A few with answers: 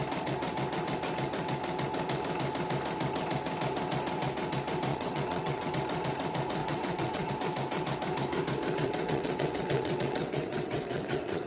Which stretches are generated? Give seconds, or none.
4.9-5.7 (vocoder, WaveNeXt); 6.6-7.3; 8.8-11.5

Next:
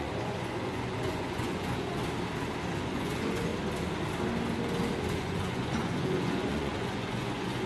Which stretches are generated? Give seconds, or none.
0.0-2.0 (vocoder, Vocos); 2.7-3.5; 5.1-7.7

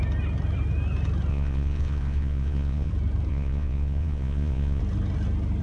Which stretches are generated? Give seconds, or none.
1.3-2.9 (vocoder, Vocos); 3.3-4.8

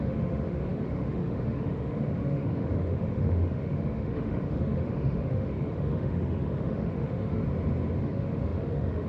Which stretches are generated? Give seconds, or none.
0.0-7.4 (autoencoder, DAC-VAE); 8.0-9.1

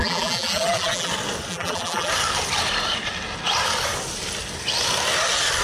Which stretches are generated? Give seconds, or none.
0.0-1.1 (vocoder, BigVGAN v2); 1.5-2.1